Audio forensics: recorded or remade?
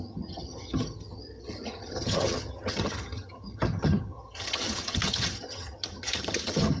remade